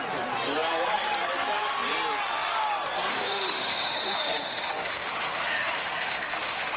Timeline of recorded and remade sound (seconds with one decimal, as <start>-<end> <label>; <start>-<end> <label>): 0.0-3.1 recorded; 3.1-6.8 remade